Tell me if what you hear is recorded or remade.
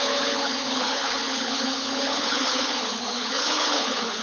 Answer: remade